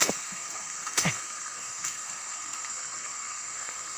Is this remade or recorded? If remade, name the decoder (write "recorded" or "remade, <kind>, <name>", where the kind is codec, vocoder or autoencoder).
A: remade, codec, SNAC